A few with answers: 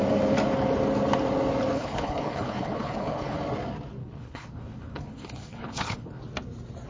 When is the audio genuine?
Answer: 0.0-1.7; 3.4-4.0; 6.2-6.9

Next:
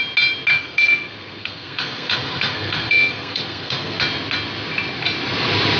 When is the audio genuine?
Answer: 0.0-0.5; 4.0-5.8